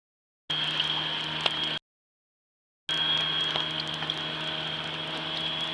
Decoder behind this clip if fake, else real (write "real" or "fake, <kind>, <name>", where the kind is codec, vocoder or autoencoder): real